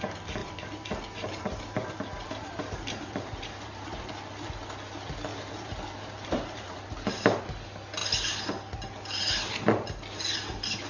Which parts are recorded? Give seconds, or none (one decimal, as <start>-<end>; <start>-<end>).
0.0-0.4; 4.0-5.3; 7.4-10.9